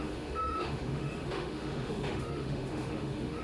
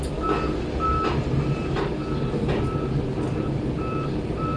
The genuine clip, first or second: second